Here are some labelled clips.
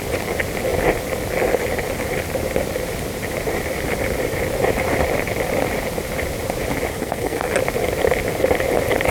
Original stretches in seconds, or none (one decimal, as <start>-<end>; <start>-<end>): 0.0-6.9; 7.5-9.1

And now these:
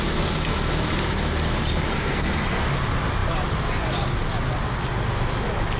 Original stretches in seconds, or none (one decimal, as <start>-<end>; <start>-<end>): 0.0-1.9; 2.6-5.8

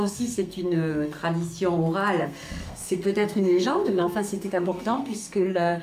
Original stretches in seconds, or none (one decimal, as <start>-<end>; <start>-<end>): 1.2-2.2

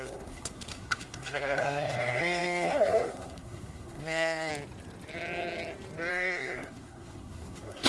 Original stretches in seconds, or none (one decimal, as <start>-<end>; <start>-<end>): 4.5-6.1